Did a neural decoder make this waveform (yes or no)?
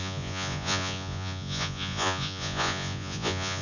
yes